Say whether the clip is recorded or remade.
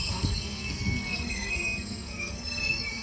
remade